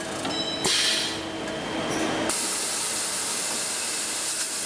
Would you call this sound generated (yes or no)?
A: no